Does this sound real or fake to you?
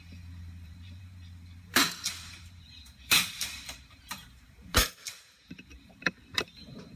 fake